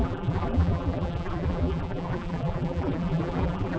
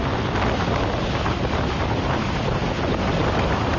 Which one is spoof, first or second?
first